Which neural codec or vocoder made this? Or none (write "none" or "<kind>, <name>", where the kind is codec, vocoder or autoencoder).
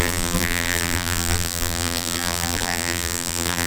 vocoder, BigVGAN v2